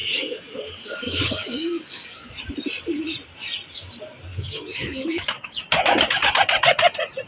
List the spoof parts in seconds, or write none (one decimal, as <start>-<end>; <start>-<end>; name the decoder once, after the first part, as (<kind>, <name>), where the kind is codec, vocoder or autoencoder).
0.0-2.4 (codec, DAC); 4.3-5.6